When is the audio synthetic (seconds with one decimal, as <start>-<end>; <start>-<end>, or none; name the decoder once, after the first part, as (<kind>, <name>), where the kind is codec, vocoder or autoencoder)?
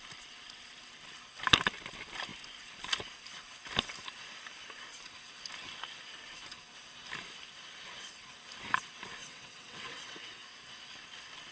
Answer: 9.2-10.4 (vocoder, WaveNeXt)